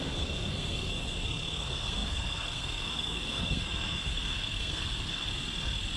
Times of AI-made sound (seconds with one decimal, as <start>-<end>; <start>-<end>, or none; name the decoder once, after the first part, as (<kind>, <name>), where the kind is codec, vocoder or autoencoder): 0.0-5.3 (codec, SNAC)